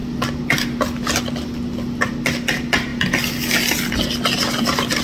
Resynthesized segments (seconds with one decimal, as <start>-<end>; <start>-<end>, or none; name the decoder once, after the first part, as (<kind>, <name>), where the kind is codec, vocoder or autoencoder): none